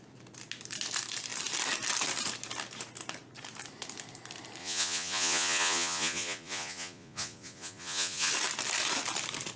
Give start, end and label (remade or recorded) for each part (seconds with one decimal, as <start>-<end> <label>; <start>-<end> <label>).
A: 0.0-4.6 recorded; 4.6-8.3 remade; 8.3-9.6 recorded